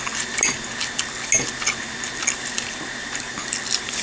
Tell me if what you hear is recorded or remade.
recorded